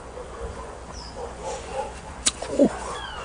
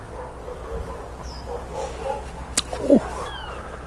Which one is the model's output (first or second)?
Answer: first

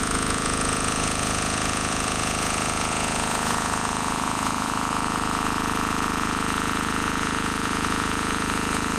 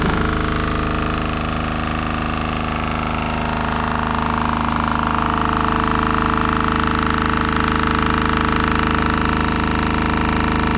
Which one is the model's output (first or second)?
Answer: first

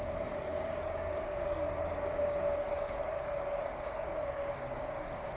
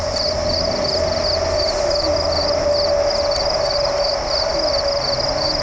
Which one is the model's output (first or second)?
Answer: first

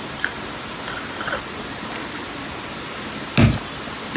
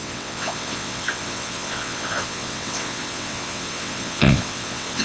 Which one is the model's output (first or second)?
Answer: second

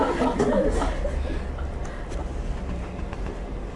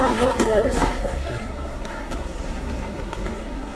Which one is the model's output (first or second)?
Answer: second